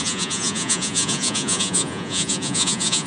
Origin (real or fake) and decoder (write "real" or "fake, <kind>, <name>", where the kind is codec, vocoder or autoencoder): fake, vocoder, Vocos